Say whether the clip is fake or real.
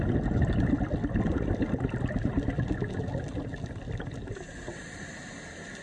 real